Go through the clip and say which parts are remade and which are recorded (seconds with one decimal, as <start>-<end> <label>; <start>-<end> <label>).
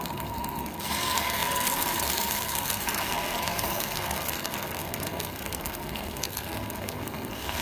0.0-7.6 remade